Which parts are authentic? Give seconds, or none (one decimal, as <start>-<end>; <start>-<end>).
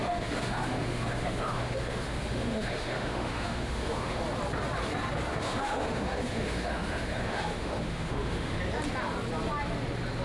4.2-5.3; 8.6-10.2